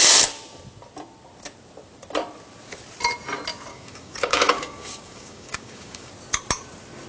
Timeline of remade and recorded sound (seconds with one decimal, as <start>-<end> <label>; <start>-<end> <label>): 0.0-3.7 recorded; 3.7-6.1 remade; 6.1-7.1 recorded